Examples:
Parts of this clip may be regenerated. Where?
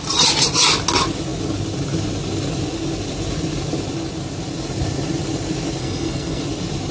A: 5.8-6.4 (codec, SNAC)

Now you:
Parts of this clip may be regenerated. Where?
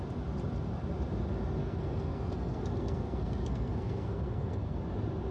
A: 1.6-4.8 (codec, SNAC)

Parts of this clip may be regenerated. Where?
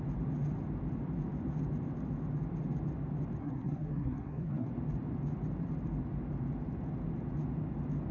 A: 3.4-4.7 (codec, SNAC)